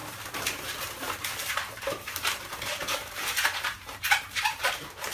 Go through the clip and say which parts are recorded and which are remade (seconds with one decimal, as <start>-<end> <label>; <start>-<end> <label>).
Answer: 0.0-5.1 remade